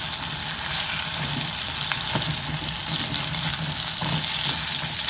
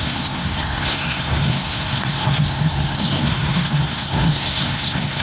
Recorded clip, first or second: first